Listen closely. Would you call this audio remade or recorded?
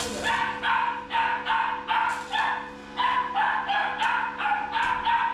recorded